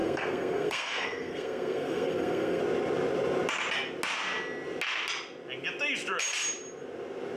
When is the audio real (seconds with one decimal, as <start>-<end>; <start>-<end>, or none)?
2.6-7.4